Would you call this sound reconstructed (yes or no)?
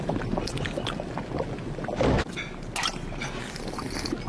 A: no